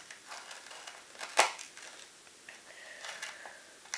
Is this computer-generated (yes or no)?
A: no